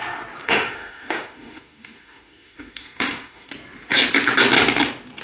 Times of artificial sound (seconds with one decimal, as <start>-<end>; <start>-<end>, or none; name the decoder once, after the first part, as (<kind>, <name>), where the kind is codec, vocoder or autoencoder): 0.4-3.5 (autoencoder, DAC-VAE)

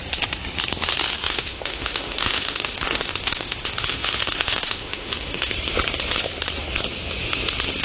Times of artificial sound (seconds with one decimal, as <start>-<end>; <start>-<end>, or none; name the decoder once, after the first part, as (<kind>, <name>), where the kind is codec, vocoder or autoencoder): 1.3-5.5 (autoencoder, DAC-VAE)

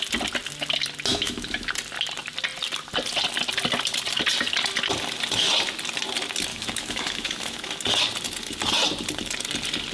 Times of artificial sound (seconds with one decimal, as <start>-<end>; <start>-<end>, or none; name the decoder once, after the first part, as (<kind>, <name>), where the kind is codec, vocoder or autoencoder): 1.1-1.7 (autoencoder, DAC-VAE); 6.5-7.7

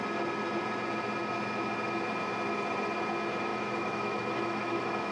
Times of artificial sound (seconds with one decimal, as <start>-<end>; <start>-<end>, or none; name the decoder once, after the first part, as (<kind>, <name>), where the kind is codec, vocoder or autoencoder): 3.5-5.1 (autoencoder, DAC-VAE)

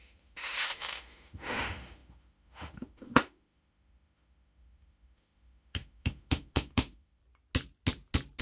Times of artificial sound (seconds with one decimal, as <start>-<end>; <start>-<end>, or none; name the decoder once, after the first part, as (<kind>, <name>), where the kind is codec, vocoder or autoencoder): 0.0-7.2 (autoencoder, DAC-VAE)